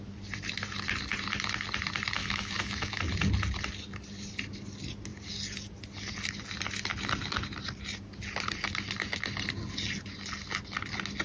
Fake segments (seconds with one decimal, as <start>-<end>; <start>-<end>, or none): 2.2-3.0